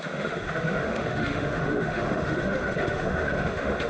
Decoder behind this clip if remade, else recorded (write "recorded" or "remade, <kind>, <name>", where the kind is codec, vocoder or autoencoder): remade, autoencoder, DAC-VAE